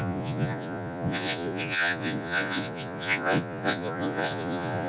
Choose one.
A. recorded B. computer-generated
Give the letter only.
B